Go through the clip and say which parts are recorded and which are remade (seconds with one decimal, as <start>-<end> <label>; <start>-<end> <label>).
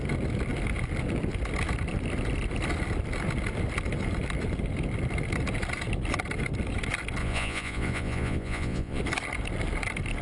0.0-7.2 recorded; 7.2-9.0 remade; 9.0-10.2 recorded